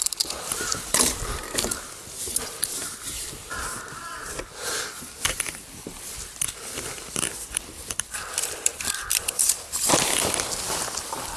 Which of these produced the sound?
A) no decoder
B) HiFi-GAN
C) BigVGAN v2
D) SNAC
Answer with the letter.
C